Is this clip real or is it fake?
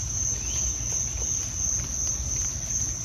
real